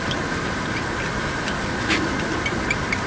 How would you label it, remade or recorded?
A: recorded